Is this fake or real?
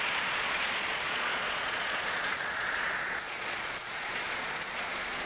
fake